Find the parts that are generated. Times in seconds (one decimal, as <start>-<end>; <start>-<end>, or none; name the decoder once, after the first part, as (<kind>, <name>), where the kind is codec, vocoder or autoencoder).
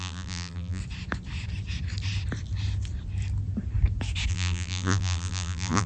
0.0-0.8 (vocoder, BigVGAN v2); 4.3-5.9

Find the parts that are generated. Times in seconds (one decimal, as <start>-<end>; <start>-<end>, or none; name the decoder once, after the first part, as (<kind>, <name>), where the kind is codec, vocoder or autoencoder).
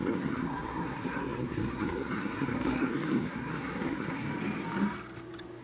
0.0-4.3 (codec, SNAC)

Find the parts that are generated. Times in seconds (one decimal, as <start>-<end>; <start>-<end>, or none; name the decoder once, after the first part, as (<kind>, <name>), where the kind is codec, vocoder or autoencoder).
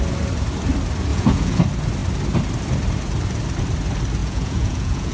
1.1-1.6 (vocoder, Vocos); 4.2-5.1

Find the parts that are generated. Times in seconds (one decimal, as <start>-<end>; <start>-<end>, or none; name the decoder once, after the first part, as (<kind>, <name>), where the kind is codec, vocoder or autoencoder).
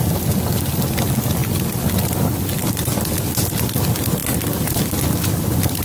none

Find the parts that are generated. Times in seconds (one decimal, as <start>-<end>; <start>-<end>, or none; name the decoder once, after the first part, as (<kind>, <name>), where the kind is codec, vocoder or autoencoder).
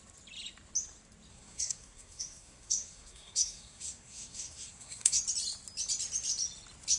1.3-5.2 (codec, SNAC)